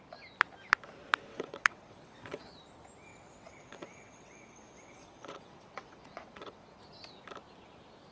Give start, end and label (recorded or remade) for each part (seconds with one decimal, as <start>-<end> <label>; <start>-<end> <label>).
0.0-1.3 recorded; 1.3-2.4 remade; 2.4-3.1 recorded; 3.1-6.8 remade; 6.8-8.1 recorded